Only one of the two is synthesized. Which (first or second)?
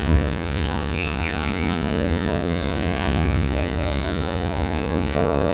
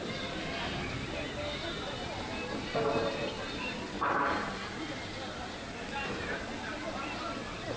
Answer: first